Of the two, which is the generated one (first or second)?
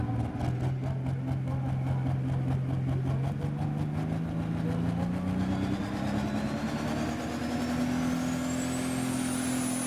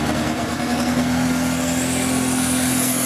second